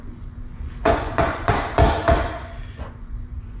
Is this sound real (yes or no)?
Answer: no